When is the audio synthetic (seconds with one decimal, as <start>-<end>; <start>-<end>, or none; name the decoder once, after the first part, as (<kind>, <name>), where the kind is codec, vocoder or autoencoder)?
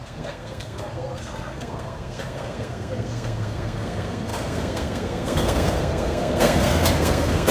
0.0-7.5 (codec, SNAC)